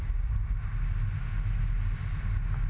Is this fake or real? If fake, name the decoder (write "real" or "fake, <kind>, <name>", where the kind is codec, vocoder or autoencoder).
real